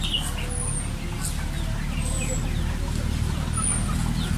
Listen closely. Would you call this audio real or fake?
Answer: real